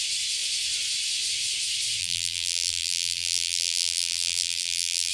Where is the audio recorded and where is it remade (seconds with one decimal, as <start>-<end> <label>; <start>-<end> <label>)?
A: 0.0-2.0 recorded; 2.0-5.1 remade